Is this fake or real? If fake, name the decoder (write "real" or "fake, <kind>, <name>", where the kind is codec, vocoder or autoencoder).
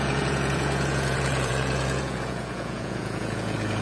fake, vocoder, Vocos